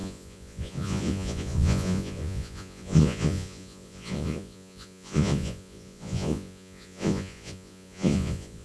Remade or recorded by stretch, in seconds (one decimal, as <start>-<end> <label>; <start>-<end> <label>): 0.0-8.6 remade